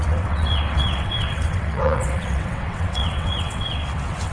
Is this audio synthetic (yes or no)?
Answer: yes